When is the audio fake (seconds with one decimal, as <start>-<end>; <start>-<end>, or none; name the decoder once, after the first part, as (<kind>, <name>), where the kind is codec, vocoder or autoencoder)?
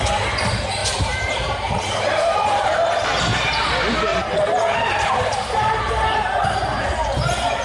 0.8-3.5 (vocoder, BigVGAN v2); 4.1-7.6